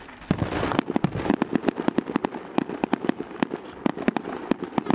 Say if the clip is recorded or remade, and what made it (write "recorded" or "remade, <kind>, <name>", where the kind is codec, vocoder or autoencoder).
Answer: recorded